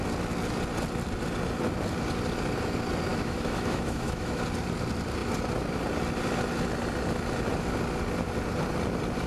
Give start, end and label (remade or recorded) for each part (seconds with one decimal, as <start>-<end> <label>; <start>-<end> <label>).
0.0-3.1 recorded; 3.1-4.4 remade; 4.4-9.3 recorded